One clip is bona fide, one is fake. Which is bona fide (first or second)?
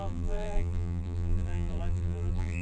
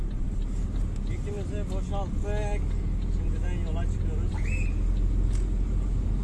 second